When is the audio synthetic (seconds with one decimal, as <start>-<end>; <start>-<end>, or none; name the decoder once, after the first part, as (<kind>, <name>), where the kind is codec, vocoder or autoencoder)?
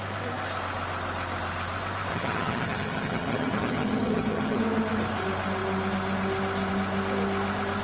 2.1-4.6 (vocoder, HiFi-GAN)